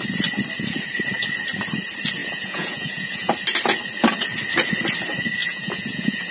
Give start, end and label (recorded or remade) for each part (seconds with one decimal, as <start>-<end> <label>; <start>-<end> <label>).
0.0-2.2 recorded; 2.2-3.3 remade; 3.3-5.4 recorded; 5.4-6.3 remade